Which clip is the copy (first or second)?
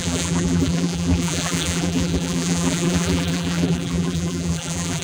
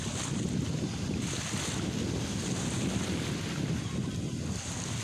first